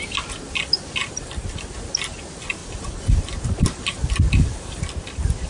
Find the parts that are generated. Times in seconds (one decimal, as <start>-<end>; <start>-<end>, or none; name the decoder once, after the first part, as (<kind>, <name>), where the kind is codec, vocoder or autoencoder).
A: 1.0-1.7 (vocoder, BigVGAN v2); 2.6-4.8